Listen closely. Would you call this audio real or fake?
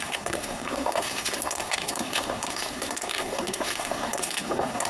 fake